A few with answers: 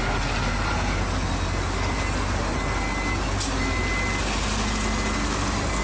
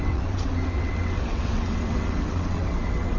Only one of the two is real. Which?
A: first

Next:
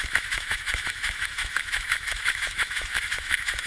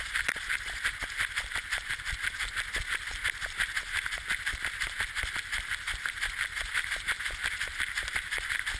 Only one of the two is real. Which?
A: second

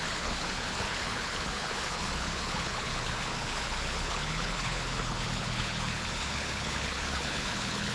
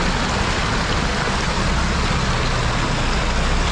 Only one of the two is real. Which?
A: second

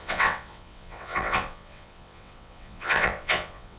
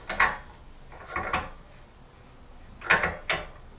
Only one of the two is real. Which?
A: second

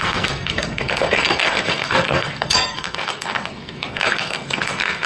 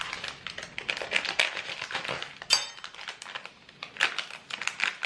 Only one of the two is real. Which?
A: second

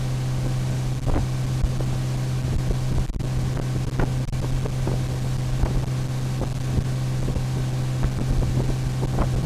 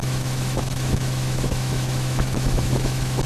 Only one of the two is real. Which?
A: first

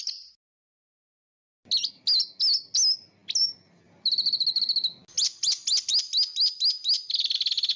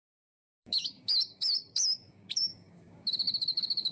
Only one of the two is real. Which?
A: first